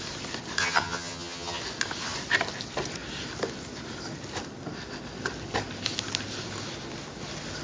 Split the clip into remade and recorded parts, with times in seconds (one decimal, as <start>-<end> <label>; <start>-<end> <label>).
0.0-0.6 recorded; 0.6-1.6 remade; 1.6-7.6 recorded